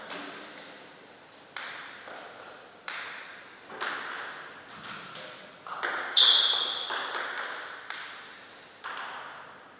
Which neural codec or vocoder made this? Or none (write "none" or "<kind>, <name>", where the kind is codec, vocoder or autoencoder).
none